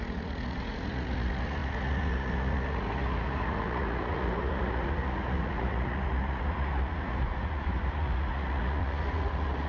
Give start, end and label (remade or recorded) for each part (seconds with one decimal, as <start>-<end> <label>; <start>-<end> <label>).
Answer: 0.0-9.7 remade

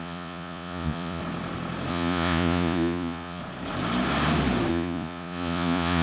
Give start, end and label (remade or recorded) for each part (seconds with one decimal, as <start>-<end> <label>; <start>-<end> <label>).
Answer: 0.0-1.2 remade; 1.2-1.9 recorded; 1.9-3.4 remade; 3.4-4.7 recorded; 4.7-6.0 remade

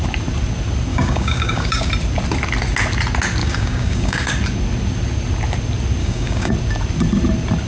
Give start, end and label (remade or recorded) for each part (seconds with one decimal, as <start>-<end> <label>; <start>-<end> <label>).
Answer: 0.0-0.9 recorded; 0.9-1.9 remade; 1.9-3.4 recorded; 3.4-4.3 remade; 4.3-6.0 recorded; 6.0-6.5 remade; 6.5-7.7 recorded

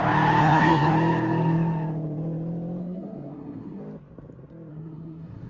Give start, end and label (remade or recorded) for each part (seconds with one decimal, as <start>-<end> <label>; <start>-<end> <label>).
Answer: 0.0-0.4 recorded; 0.4-0.9 remade; 0.9-2.8 recorded; 2.8-3.8 remade; 3.8-4.7 recorded; 4.7-5.5 remade

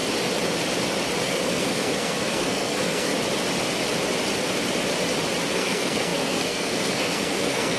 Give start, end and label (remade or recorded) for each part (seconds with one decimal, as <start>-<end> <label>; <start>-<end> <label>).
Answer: 0.0-1.2 recorded; 1.2-3.1 remade; 3.1-5.5 recorded; 5.5-7.8 remade

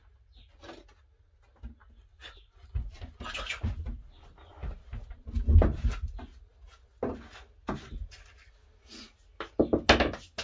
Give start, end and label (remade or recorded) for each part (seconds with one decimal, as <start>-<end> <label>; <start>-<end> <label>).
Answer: 0.0-1.8 recorded; 1.8-3.5 remade; 3.5-10.4 recorded